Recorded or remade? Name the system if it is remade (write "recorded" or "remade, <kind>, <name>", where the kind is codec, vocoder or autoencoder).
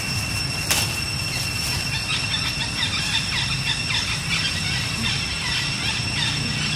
recorded